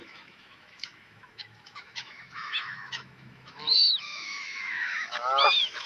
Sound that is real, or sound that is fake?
fake